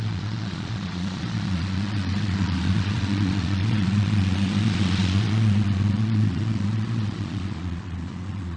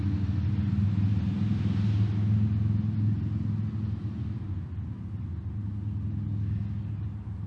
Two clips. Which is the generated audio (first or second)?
first